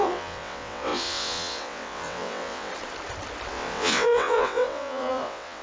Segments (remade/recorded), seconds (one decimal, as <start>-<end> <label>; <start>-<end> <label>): 0.0-2.7 remade; 2.7-3.5 recorded; 3.5-5.6 remade